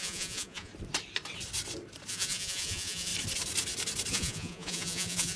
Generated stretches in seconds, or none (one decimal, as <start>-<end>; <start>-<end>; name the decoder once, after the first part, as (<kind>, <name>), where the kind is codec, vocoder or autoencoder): 0.0-0.7 (vocoder, Vocos); 2.1-3.1; 4.1-5.4